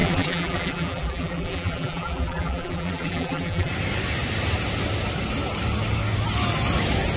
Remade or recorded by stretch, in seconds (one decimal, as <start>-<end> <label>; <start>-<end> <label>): 0.0-3.7 remade; 3.7-7.2 recorded